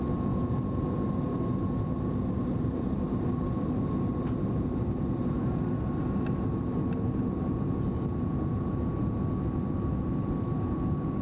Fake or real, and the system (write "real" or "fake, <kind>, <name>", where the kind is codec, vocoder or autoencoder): real